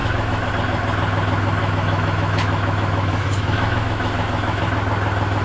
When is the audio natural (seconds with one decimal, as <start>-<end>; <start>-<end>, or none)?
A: 0.5-1.6; 4.6-5.4